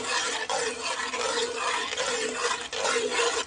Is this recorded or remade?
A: recorded